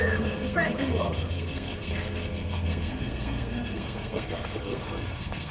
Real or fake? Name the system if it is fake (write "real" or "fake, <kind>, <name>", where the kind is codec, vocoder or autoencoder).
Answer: fake, codec, SNAC